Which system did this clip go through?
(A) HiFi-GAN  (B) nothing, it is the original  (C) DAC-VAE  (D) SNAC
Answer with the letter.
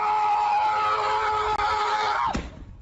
B